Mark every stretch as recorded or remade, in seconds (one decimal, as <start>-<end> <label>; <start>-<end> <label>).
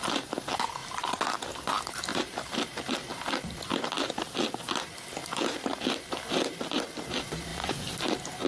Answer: 0.0-2.1 recorded; 2.1-3.1 remade; 3.1-5.2 recorded; 5.2-6.7 remade; 6.7-7.5 recorded; 7.5-8.1 remade; 8.1-8.5 recorded